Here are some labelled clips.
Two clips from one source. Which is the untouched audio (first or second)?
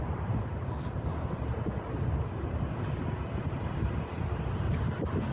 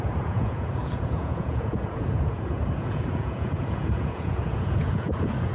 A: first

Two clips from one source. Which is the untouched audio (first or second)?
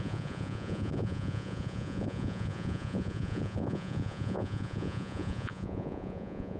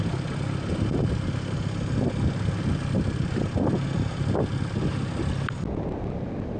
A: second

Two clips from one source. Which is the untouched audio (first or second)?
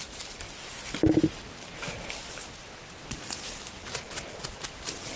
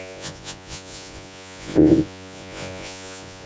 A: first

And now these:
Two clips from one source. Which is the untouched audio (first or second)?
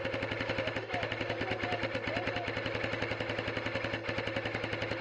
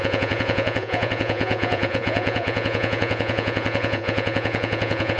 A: first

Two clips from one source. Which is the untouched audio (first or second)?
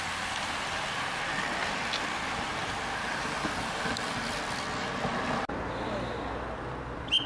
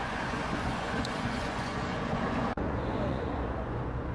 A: first